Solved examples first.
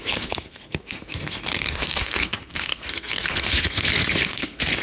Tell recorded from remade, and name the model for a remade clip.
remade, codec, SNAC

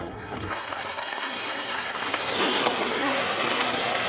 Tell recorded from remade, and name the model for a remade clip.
remade, codec, SNAC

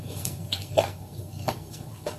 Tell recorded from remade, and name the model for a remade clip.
remade, codec, SNAC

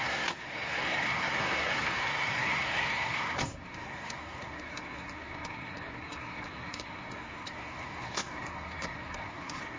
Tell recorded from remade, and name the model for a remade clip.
remade, codec, SNAC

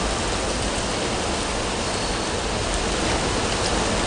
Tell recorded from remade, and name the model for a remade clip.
recorded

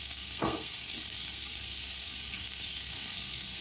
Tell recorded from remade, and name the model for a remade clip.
remade, codec, SNAC